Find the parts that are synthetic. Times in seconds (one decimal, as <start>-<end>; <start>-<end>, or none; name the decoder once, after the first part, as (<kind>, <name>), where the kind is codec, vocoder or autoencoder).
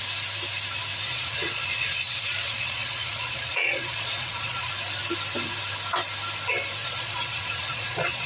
1.1-4.7 (vocoder, Vocos); 6.8-8.3